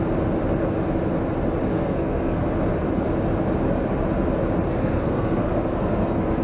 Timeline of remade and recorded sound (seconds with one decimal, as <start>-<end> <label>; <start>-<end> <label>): 0.0-1.7 recorded; 1.7-2.5 remade; 2.5-4.7 recorded; 4.7-6.4 remade